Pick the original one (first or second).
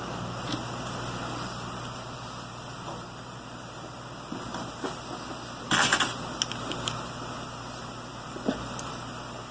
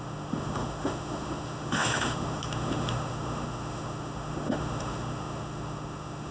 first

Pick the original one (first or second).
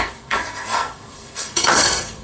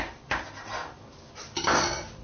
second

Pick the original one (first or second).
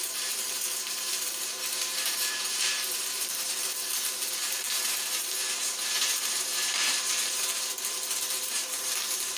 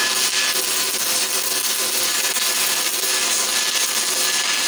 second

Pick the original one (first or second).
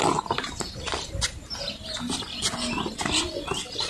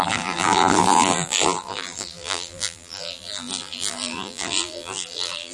first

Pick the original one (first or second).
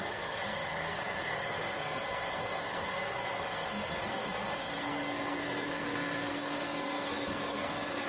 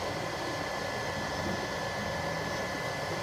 second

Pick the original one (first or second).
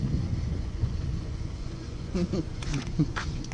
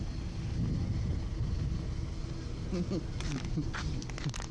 second